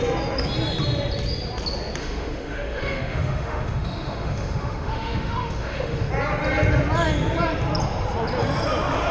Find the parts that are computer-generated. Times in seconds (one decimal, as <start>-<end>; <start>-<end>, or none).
2.0-6.1